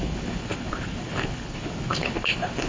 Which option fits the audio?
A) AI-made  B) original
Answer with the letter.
A